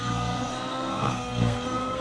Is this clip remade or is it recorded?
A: remade